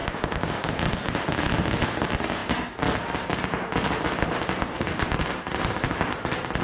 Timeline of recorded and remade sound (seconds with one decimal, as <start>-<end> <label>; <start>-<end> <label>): 0.0-0.9 remade; 0.9-6.6 recorded